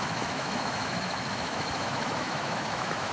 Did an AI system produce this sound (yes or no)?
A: yes